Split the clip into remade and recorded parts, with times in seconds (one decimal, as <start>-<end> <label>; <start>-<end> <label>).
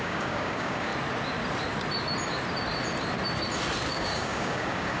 0.0-0.9 remade; 0.9-3.9 recorded; 3.9-5.0 remade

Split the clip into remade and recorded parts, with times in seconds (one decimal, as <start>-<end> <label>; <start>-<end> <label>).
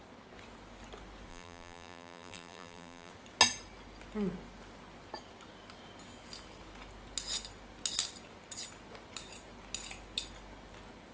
0.0-1.3 recorded; 1.3-3.1 remade; 3.1-11.1 recorded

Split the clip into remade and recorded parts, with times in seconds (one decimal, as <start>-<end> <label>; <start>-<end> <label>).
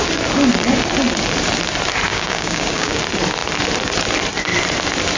0.0-2.1 recorded; 2.1-3.0 remade; 3.0-5.2 recorded